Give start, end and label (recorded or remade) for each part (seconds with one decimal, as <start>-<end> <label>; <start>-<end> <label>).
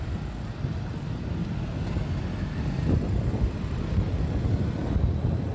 0.0-5.5 recorded